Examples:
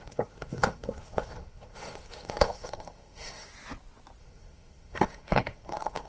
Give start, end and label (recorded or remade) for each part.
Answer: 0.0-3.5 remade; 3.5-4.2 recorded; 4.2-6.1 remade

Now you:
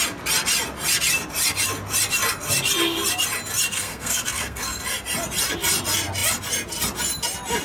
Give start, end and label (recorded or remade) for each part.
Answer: 0.0-3.7 recorded; 3.7-4.8 remade; 4.8-7.6 recorded

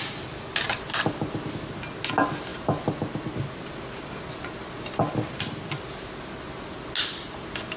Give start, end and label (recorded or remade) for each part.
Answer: 0.0-7.8 recorded

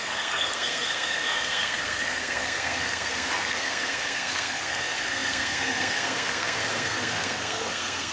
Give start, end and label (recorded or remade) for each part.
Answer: 0.0-8.1 remade

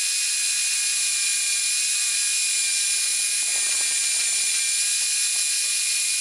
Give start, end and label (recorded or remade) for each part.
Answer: 0.0-6.2 recorded

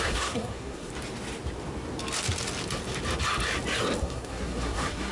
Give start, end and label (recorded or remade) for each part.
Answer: 0.0-0.9 remade; 0.9-4.0 recorded; 4.0-5.1 remade